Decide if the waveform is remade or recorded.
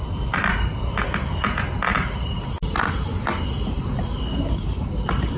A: recorded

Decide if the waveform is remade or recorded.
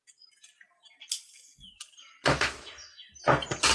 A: recorded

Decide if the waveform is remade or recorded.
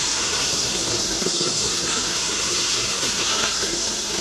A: remade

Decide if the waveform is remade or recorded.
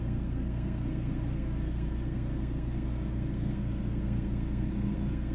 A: remade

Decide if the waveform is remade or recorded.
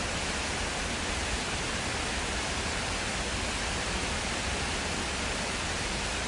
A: recorded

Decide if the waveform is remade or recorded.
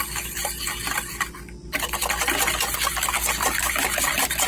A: recorded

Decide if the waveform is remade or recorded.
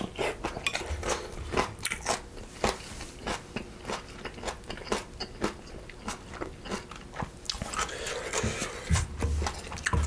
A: recorded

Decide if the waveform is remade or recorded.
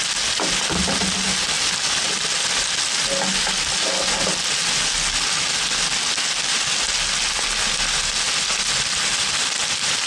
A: recorded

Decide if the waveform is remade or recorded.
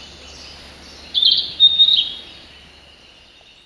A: recorded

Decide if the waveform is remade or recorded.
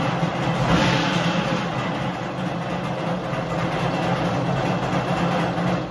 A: recorded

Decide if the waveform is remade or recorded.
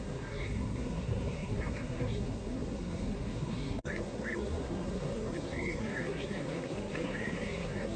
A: remade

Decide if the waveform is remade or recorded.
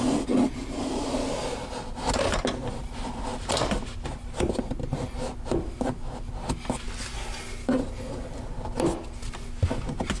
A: recorded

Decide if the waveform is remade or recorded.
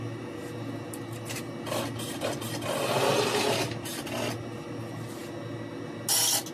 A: recorded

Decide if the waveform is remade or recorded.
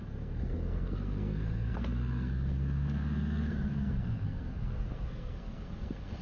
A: remade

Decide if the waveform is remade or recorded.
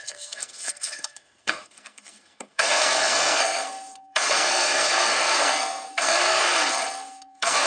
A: remade